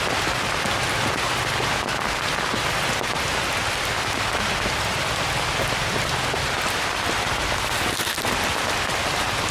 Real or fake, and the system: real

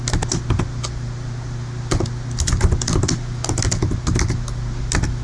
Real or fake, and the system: real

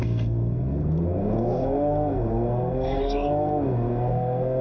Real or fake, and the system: fake, codec, SNAC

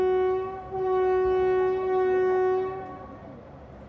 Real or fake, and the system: real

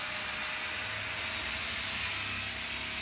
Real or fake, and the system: real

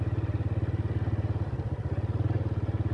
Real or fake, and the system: real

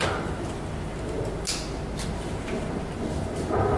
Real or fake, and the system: real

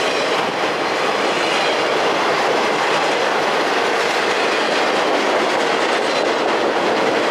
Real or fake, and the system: real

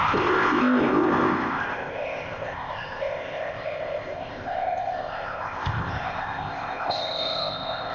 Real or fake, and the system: fake, codec, ZipCodec